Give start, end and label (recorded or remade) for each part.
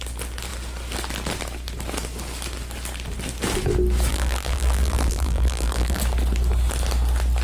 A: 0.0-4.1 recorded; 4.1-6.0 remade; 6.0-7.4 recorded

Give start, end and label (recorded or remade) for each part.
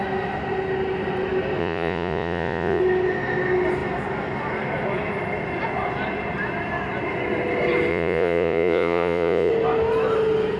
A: 0.0-1.6 recorded; 1.6-2.8 remade; 2.8-7.9 recorded; 7.9-9.5 remade; 9.5-10.6 recorded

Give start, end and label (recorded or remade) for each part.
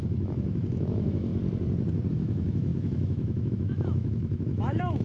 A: 0.0-1.3 remade; 1.3-2.1 recorded; 2.1-5.0 remade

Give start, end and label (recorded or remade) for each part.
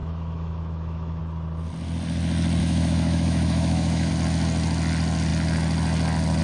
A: 0.0-1.2 remade; 1.2-2.6 recorded; 2.6-4.1 remade; 4.1-6.4 recorded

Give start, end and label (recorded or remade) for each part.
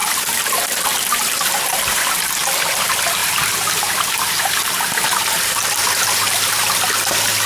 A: 0.0-2.1 remade; 2.1-3.2 recorded; 3.2-6.7 remade; 6.7-7.5 recorded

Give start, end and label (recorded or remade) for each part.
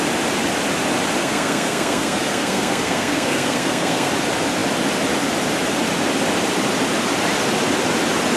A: 0.0-1.2 recorded; 1.2-4.1 remade; 4.1-8.4 recorded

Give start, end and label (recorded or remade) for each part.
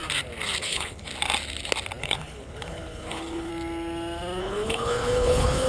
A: 0.0-0.6 recorded; 0.6-1.1 remade; 1.1-2.0 recorded; 2.0-3.5 remade; 3.5-4.4 recorded; 4.4-5.7 remade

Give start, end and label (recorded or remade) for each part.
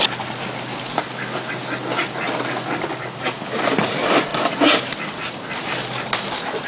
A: 0.0-0.4 recorded; 0.4-2.8 remade; 2.8-4.3 recorded; 4.3-6.2 remade; 6.2-6.7 recorded